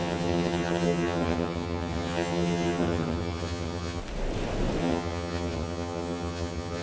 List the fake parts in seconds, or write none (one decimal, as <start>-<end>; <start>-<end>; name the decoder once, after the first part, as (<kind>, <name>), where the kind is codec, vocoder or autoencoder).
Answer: 0.0-4.0 (vocoder, HiFi-GAN); 4.8-6.8